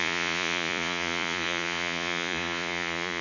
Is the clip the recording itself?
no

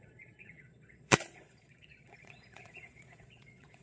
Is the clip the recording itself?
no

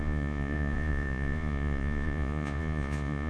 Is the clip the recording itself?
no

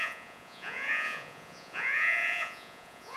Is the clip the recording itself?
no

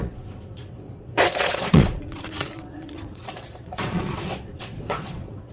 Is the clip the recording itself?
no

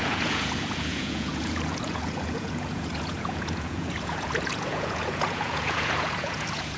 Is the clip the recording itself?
no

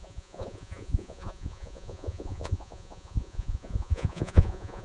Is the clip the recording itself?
no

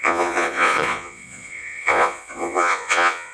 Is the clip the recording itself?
no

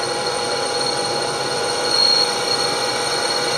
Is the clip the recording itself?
no